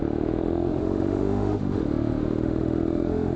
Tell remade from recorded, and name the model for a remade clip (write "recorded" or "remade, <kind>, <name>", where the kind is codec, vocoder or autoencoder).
remade, autoencoder, DAC-VAE